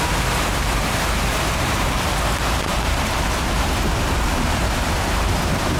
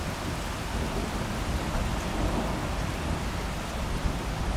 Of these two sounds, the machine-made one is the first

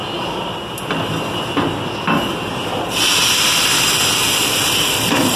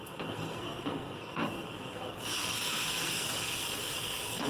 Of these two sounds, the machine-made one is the second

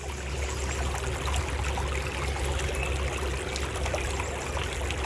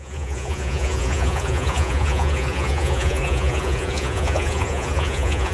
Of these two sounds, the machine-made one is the second